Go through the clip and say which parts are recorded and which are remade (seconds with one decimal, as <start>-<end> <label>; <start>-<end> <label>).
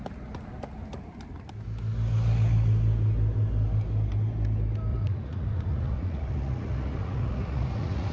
0.0-4.9 recorded; 4.9-8.1 remade